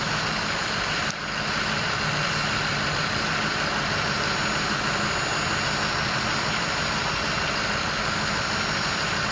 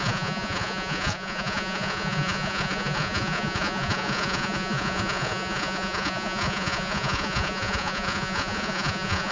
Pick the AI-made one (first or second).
second